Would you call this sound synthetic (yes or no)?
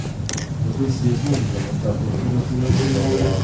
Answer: no